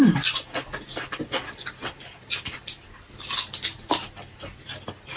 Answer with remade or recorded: recorded